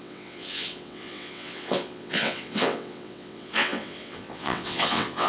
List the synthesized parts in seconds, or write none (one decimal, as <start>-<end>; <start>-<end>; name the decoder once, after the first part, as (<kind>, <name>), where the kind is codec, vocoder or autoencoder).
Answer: 0.0-5.3 (vocoder, WaveNeXt)